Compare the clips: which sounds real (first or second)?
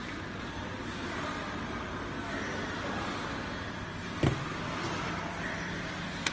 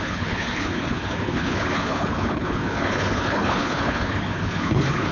first